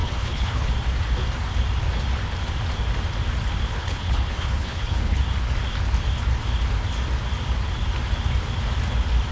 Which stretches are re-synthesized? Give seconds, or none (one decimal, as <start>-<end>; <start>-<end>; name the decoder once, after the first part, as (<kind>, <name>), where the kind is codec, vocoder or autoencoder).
0.0-0.7 (codec, HILCodec); 3.7-5.2